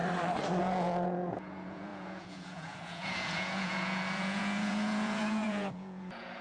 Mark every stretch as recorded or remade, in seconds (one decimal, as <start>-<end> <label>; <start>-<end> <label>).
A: 0.0-0.6 recorded; 0.6-6.4 remade